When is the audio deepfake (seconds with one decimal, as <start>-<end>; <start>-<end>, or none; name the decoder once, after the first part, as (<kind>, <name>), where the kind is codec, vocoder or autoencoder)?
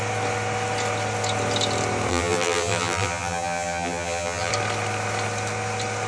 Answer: 2.1-4.5 (vocoder, BigVGAN v2)